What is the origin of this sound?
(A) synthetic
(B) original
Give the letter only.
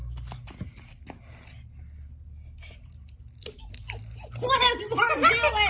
B